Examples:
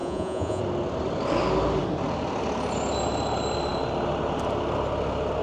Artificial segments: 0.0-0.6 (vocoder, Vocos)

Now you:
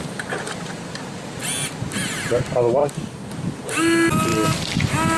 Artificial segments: none